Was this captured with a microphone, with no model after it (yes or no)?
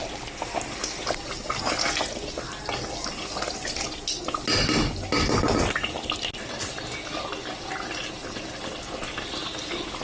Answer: yes